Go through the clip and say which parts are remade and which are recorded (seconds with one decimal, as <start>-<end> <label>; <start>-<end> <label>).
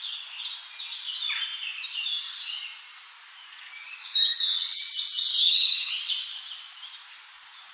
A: 0.0-4.0 recorded; 4.0-4.8 remade; 4.8-5.4 recorded; 5.4-6.0 remade; 6.0-7.7 recorded